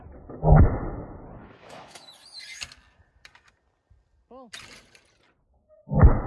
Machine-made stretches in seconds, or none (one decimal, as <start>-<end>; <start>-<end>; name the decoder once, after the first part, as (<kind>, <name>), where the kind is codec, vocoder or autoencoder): 1.4-2.1 (autoencoder, DAC-VAE); 5.8-6.3